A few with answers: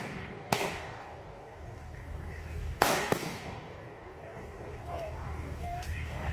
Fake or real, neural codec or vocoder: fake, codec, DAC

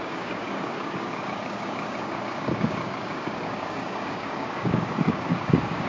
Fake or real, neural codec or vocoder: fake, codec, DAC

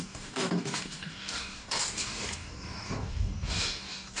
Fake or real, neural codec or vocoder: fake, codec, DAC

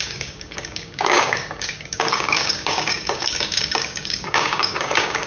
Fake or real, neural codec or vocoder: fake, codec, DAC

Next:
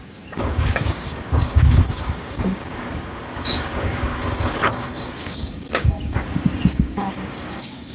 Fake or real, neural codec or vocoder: fake, codec, DAC